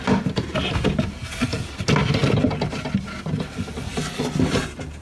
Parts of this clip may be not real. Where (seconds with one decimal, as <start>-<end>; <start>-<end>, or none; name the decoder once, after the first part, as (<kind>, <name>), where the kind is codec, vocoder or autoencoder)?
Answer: none